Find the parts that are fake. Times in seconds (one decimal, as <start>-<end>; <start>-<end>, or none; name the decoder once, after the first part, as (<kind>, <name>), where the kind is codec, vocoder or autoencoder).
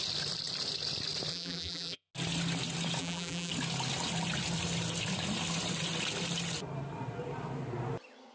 1.3-2.1 (vocoder, BigVGAN v2); 3.0-3.5